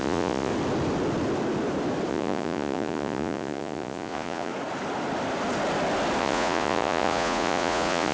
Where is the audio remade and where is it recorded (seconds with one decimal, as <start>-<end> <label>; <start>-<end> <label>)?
0.0-0.5 remade; 0.5-2.1 recorded; 2.1-4.5 remade; 4.5-6.2 recorded; 6.2-8.1 remade